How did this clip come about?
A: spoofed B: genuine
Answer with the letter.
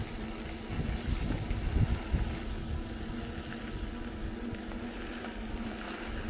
B